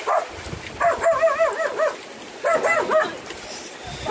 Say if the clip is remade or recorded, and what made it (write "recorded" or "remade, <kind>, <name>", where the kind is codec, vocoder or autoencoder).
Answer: recorded